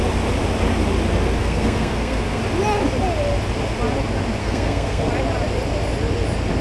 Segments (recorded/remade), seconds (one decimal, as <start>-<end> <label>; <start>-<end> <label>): 0.0-1.4 recorded; 1.4-2.4 remade; 2.4-4.4 recorded; 4.4-5.1 remade; 5.1-6.6 recorded